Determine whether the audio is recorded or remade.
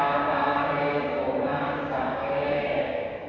remade